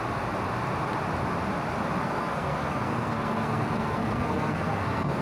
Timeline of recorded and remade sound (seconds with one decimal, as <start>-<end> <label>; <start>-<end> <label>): 0.0-2.0 recorded; 2.0-5.2 remade

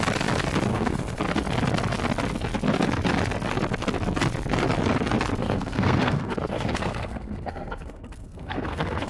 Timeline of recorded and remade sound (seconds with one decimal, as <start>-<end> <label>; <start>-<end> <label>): 0.0-0.7 recorded; 0.7-1.2 remade; 1.2-5.4 recorded; 5.4-9.1 remade

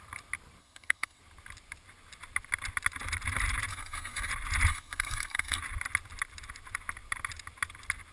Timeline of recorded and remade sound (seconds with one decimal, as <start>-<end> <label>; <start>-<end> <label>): 0.0-0.6 recorded; 0.6-1.2 remade; 1.2-3.7 recorded; 3.7-4.3 remade; 4.3-4.7 recorded; 4.7-5.6 remade; 5.6-8.1 recorded

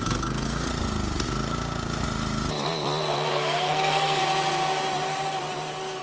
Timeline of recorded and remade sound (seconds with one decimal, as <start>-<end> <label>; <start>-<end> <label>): 0.0-0.7 remade; 0.7-3.3 recorded; 3.3-4.2 remade; 4.2-6.0 recorded

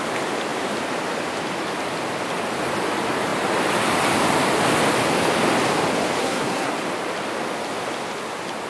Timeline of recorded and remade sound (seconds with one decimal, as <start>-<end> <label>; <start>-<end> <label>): 0.0-6.2 recorded; 6.2-6.7 remade; 6.7-8.7 recorded

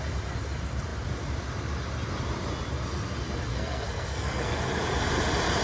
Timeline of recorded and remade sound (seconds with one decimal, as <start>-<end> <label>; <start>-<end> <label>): 0.0-3.5 recorded; 3.5-4.6 remade; 4.6-5.6 recorded

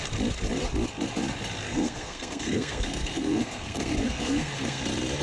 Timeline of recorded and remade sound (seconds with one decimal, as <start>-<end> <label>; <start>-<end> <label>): 0.0-1.7 recorded; 1.7-4.8 remade; 4.8-5.2 recorded

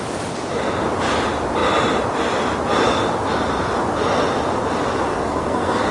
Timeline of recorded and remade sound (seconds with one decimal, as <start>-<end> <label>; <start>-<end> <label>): 0.0-5.1 recorded; 5.1-5.9 remade